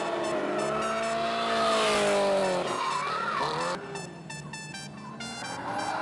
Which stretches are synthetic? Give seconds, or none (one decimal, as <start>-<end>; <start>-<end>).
none